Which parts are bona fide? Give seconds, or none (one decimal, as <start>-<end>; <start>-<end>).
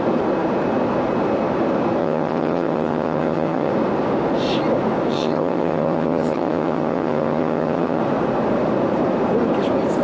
0.0-2.0; 3.7-5.1; 8.0-10.0